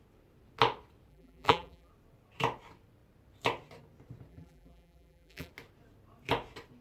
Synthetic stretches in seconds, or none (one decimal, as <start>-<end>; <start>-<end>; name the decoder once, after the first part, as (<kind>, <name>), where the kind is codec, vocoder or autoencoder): 1.1-1.9 (vocoder, BigVGAN v2); 4.3-5.5

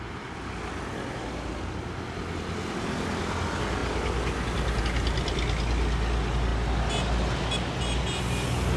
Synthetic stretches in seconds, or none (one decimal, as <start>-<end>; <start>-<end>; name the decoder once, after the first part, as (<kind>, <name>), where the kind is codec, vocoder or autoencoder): none

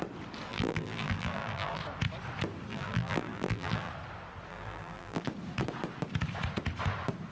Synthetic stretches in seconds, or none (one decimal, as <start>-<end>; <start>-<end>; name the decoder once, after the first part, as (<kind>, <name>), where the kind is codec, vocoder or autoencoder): 0.5-1.8 (vocoder, BigVGAN v2); 2.7-3.9; 4.5-5.2

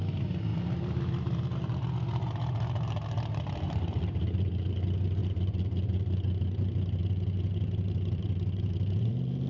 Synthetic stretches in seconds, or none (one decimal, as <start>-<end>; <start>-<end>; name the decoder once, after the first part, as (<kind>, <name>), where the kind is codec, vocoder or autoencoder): 0.5-4.5 (vocoder, BigVGAN v2); 5.2-9.1

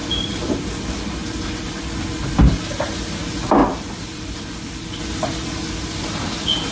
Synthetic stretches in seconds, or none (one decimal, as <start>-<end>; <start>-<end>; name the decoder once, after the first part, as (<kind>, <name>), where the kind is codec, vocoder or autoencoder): 0.0-0.5 (vocoder, BigVGAN v2); 3.6-5.0